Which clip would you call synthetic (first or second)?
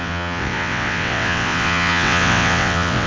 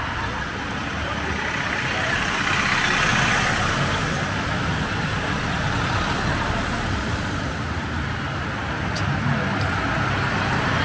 first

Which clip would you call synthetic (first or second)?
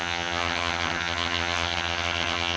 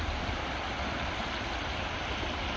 first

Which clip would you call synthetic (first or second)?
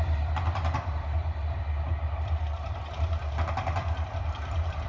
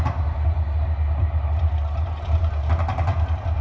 first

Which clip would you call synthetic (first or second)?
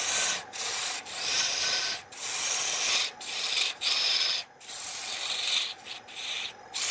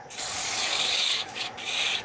second